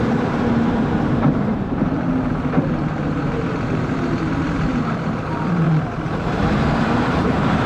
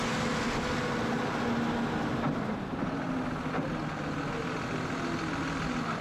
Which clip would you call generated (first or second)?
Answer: first